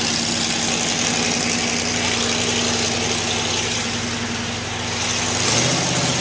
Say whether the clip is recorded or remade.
recorded